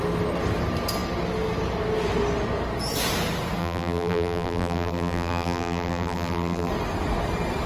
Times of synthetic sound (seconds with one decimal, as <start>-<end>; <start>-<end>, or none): 3.6-6.7